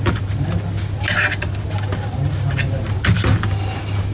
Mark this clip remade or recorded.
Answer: recorded